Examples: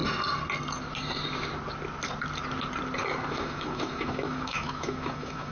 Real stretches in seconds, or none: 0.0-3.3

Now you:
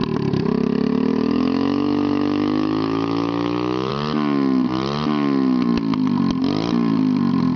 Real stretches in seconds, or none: 0.0-1.1; 3.9-7.6